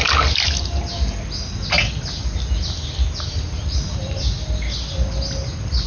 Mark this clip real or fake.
real